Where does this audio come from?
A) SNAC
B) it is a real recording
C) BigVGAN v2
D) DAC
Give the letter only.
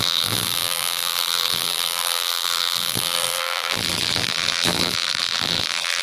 C